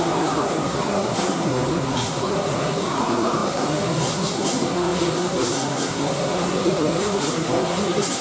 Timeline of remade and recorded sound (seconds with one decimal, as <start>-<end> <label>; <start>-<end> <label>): 0.0-8.2 remade